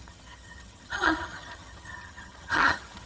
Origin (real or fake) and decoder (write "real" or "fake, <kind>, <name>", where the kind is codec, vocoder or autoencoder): fake, vocoder, HiFi-GAN